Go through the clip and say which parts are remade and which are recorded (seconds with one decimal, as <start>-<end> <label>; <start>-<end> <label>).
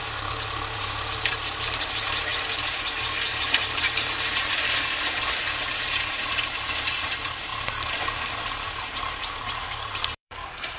0.0-7.5 remade; 7.5-8.8 recorded; 8.8-10.8 remade